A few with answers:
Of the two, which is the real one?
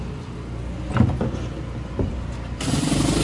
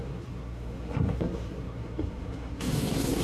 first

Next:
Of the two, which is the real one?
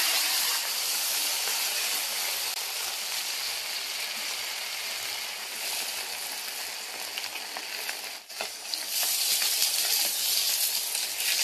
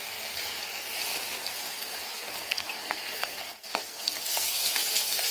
first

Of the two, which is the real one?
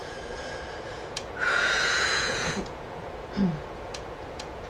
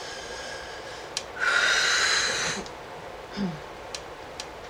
second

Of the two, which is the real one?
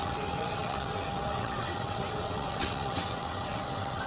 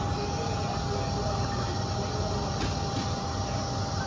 second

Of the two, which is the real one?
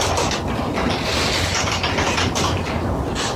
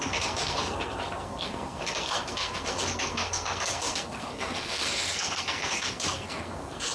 first